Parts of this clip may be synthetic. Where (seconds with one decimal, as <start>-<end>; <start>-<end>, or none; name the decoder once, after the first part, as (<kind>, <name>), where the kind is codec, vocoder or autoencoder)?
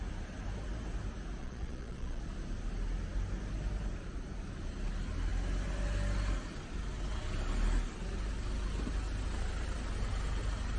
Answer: 1.4-2.2 (vocoder, Vocos)